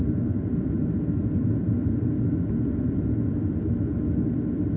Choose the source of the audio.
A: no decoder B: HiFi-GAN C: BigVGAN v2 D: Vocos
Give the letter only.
A